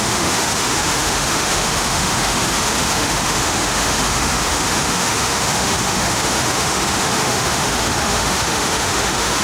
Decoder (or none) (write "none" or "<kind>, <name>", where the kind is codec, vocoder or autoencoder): autoencoder, DAC-VAE